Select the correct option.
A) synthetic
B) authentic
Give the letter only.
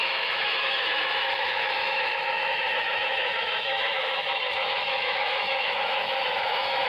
A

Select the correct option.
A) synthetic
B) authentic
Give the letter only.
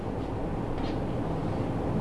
B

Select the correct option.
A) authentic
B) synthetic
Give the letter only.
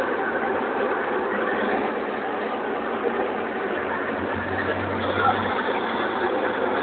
A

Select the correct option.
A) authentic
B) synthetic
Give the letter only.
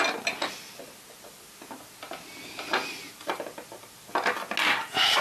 A